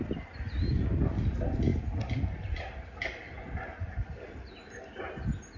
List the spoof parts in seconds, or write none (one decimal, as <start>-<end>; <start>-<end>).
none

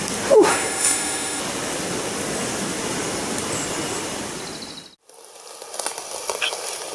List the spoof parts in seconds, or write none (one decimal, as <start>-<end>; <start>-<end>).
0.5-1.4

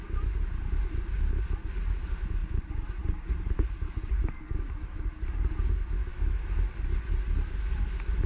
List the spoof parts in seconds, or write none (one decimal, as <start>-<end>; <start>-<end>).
6.1-6.7